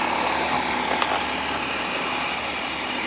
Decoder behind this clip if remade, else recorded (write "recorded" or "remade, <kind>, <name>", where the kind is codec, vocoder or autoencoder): recorded